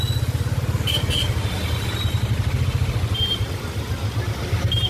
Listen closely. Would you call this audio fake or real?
real